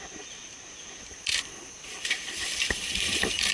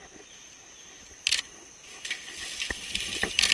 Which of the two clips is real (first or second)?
second